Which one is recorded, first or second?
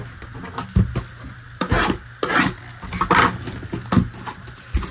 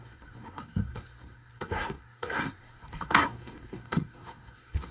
first